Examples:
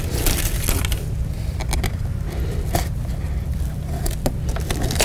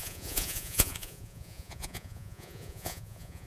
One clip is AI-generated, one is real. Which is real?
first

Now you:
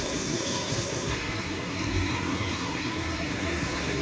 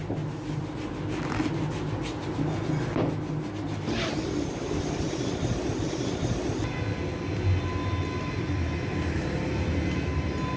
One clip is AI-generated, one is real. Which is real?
second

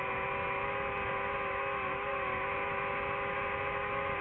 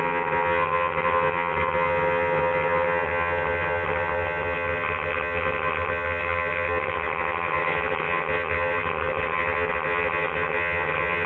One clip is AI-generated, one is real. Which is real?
first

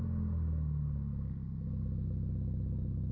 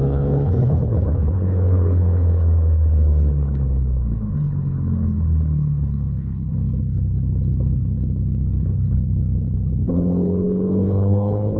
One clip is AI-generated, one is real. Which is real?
first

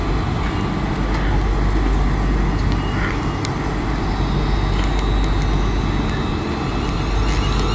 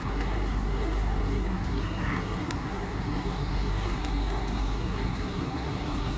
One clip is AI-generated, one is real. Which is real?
first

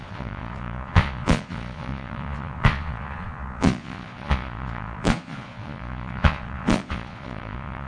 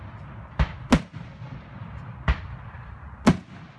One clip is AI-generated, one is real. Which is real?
second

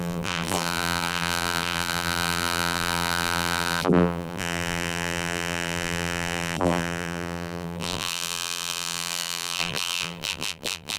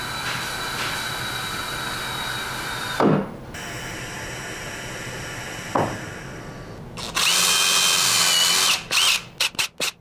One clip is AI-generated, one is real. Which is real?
second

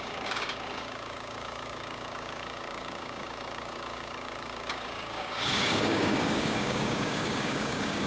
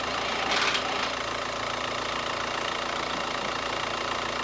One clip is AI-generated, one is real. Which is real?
second